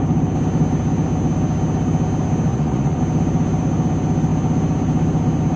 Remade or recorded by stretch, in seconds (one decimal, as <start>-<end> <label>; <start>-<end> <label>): 0.0-2.5 recorded; 2.5-3.0 remade; 3.0-5.6 recorded